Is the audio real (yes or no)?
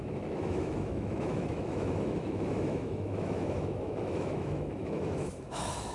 no